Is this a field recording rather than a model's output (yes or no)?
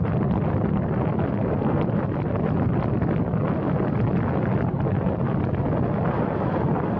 yes